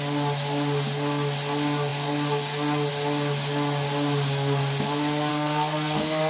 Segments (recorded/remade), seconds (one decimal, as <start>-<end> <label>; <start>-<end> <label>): 0.0-5.3 recorded; 5.3-6.3 remade